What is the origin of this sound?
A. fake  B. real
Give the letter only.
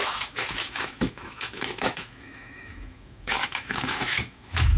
A